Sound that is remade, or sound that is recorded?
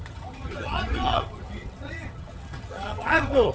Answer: remade